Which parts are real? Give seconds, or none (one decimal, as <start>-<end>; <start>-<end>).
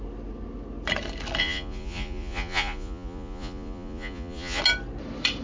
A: 0.0-1.4; 4.6-5.4